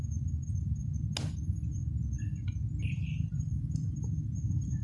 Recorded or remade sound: recorded